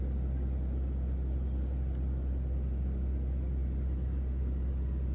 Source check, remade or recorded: recorded